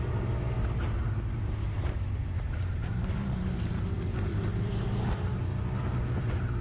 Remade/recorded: remade